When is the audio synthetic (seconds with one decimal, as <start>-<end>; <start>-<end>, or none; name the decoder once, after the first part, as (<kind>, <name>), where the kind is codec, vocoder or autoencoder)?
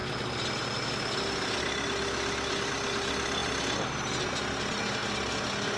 none